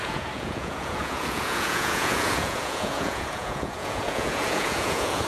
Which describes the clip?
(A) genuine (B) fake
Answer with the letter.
B